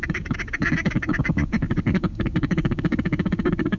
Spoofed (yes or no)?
yes